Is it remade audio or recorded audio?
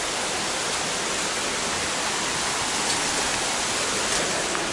recorded